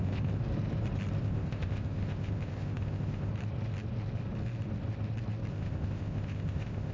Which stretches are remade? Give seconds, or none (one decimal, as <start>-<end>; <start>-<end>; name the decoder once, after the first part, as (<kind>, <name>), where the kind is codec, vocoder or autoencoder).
0.0-0.4 (codec, ZipCodec); 1.2-3.3; 5.5-6.9